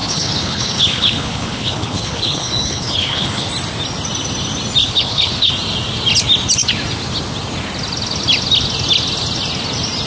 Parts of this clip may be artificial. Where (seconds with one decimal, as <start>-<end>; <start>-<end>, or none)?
0.0-3.5; 4.8-5.5